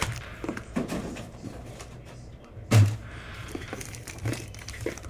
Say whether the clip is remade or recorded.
remade